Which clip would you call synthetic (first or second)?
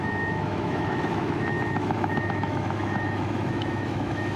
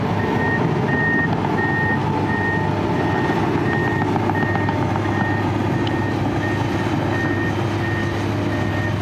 first